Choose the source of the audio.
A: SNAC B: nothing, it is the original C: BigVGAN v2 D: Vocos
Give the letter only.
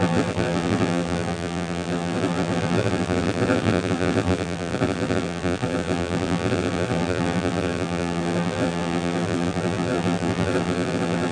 C